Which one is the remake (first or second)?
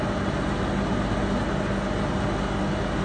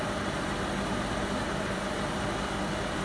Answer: second